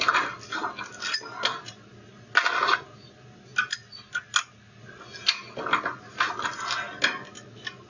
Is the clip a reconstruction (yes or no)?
no